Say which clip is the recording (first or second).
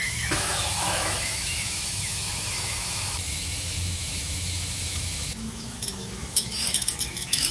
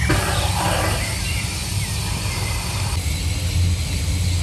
second